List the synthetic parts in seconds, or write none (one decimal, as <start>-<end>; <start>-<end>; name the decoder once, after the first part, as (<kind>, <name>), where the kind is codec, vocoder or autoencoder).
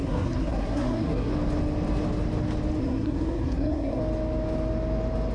0.0-1.3 (codec, SNAC); 2.8-4.0